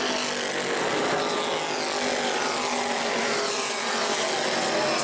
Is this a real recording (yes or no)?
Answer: yes